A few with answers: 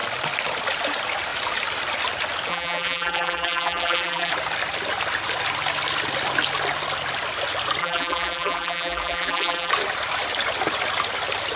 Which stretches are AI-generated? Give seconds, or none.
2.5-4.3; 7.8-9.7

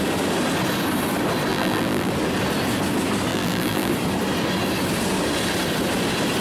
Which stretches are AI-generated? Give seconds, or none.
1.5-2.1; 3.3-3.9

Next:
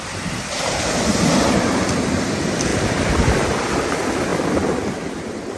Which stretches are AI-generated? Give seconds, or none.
2.7-3.4